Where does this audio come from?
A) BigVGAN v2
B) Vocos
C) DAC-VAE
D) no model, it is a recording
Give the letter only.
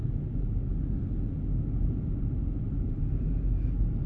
D